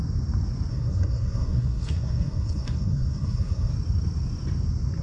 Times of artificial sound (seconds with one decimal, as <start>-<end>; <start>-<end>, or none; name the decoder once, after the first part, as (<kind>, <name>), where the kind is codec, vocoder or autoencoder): 0.7-3.7 (codec, SNAC)